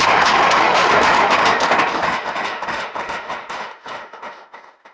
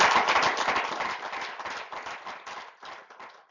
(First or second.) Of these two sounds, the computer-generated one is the first